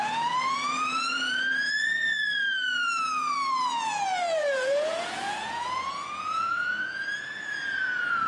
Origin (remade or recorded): remade